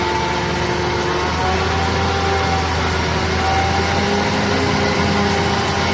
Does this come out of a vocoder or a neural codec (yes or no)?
no